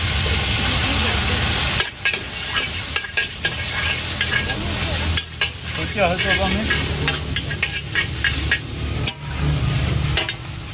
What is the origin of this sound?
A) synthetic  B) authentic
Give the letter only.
B